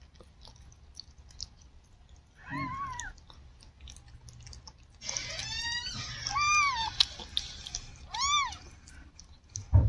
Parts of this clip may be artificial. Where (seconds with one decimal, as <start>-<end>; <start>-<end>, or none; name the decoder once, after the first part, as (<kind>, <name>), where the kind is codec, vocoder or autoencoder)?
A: none